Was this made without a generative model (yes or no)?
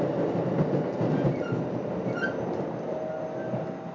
yes